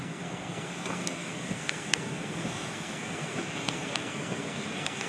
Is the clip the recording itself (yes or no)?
no